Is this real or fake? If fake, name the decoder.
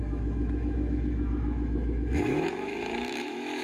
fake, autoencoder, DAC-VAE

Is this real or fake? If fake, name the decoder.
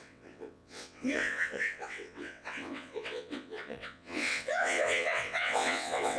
fake, vocoder, WaveNeXt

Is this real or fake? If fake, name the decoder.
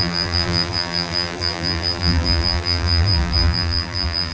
fake, vocoder, BigVGAN v2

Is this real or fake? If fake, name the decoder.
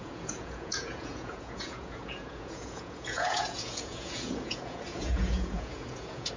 fake, vocoder, Vocos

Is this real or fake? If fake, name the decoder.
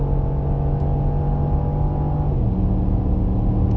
real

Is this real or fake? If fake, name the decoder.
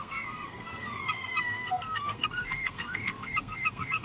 fake, codec, SNAC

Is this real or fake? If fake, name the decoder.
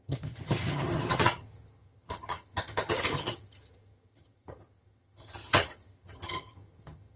fake, vocoder, HiFi-GAN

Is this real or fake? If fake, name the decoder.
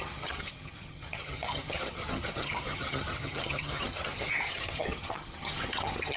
fake, vocoder, HiFi-GAN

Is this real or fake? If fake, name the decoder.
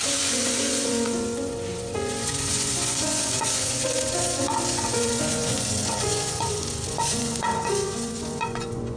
fake, vocoder, Vocos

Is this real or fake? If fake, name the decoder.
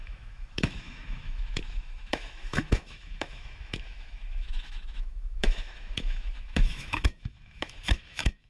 fake, autoencoder, DAC-VAE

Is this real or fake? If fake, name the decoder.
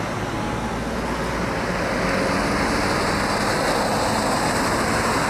real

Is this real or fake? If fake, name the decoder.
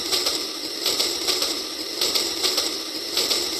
fake, vocoder, BigVGAN v2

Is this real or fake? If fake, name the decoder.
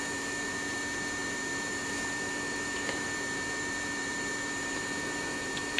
fake, vocoder, BigVGAN v2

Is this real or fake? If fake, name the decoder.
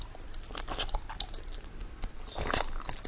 real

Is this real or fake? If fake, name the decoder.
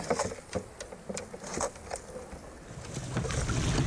real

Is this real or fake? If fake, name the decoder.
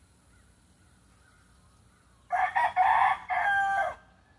real